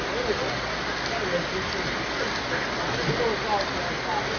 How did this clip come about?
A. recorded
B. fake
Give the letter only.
A